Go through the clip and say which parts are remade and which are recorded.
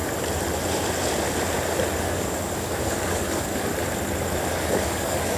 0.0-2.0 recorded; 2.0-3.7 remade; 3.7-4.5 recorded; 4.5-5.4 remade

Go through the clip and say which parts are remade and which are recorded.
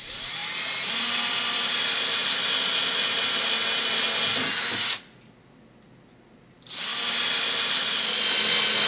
0.0-8.9 recorded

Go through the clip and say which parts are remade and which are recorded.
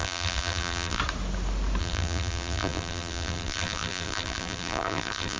0.0-1.0 remade; 1.0-1.8 recorded; 1.8-5.4 remade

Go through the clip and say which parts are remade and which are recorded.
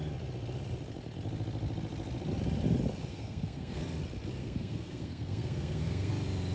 0.0-3.1 recorded; 3.1-3.8 remade; 3.8-4.4 recorded; 4.4-6.1 remade; 6.1-6.5 recorded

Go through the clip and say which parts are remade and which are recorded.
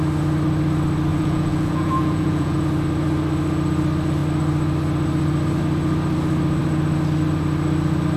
0.0-1.1 recorded; 1.1-2.6 remade; 2.6-8.2 recorded